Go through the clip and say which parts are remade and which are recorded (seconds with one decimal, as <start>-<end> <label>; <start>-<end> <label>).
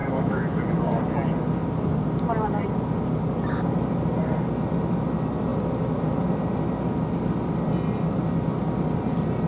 0.0-0.6 remade; 0.6-9.5 recorded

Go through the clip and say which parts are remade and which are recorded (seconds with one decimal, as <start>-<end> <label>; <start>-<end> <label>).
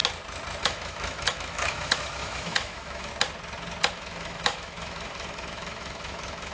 0.0-0.6 recorded; 0.6-3.1 remade; 3.1-3.9 recorded; 3.9-6.5 remade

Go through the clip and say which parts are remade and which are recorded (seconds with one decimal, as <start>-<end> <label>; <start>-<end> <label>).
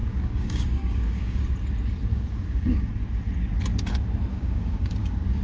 0.0-1.4 remade; 1.4-2.1 recorded; 2.1-2.9 remade; 2.9-4.3 recorded; 4.3-5.4 remade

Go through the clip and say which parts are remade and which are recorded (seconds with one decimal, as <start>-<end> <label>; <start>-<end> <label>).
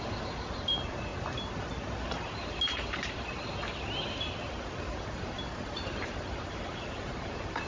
0.0-1.1 remade; 1.1-2.1 recorded; 2.1-7.7 remade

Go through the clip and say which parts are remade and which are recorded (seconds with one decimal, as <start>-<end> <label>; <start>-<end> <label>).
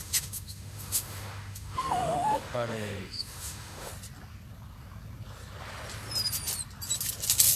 0.0-3.9 remade; 3.9-7.6 recorded